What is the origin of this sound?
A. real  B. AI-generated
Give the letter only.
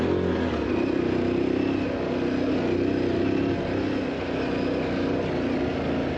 A